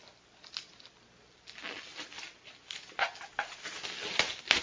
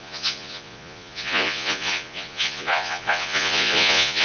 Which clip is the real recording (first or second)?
first